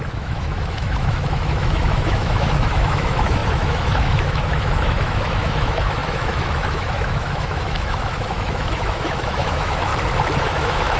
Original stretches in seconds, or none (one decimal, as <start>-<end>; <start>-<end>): 9.9-10.4

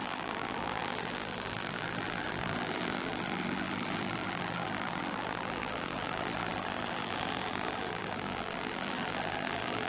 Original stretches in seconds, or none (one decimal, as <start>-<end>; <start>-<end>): none

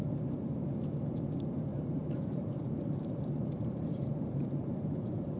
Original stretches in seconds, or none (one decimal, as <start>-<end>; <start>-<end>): 0.0-1.7; 4.9-5.4